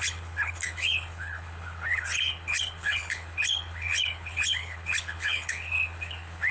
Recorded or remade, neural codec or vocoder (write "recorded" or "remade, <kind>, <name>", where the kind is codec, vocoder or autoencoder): remade, codec, HILCodec